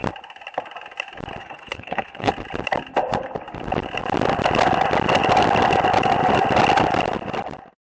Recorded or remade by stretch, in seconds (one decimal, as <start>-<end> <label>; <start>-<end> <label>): 0.0-1.4 recorded; 1.4-2.3 remade; 2.3-7.9 recorded